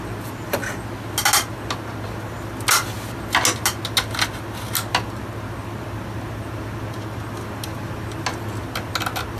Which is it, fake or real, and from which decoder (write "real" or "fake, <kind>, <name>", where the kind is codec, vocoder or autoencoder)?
real